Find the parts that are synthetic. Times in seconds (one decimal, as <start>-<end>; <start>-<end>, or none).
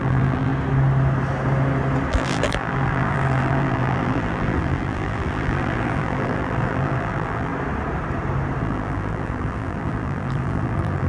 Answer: 0.0-0.5; 2.1-7.5; 8.6-11.1